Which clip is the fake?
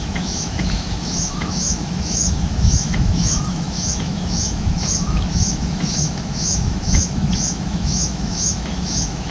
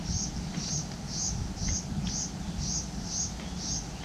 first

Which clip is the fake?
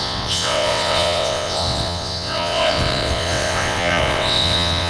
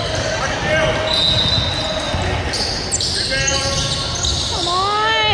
first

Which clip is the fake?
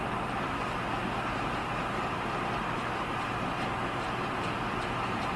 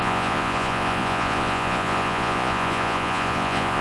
second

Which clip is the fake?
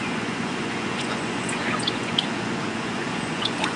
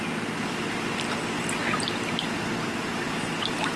first